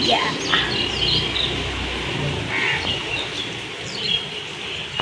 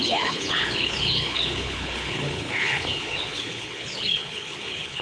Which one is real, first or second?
first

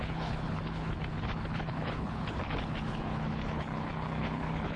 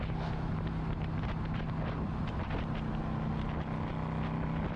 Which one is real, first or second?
second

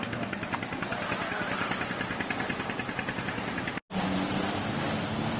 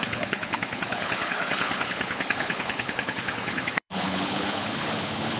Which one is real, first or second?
first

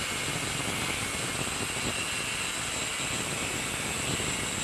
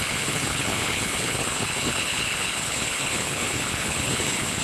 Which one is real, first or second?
first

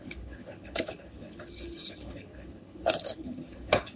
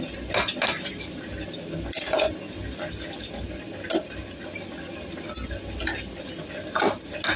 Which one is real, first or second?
second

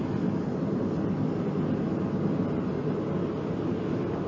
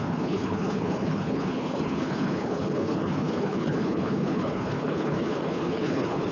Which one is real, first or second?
first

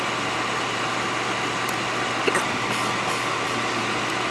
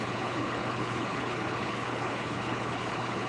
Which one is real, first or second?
first